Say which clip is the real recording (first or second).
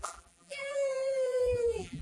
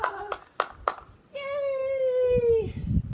second